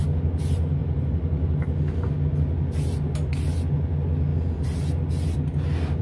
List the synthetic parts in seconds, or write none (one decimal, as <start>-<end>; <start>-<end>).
none